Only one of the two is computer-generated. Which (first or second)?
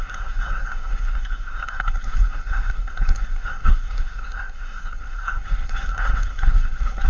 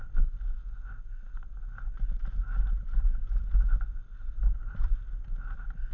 first